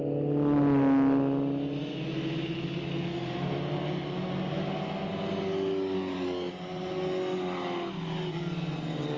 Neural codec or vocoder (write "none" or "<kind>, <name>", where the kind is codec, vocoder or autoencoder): none